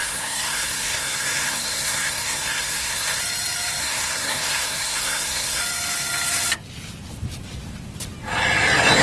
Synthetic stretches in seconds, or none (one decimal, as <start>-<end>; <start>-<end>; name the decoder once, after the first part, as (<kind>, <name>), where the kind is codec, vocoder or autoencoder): 0.0-3.2 (codec, SNAC); 3.8-5.6